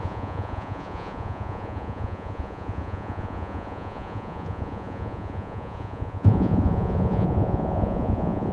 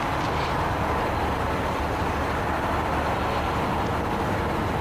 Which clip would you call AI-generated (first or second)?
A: first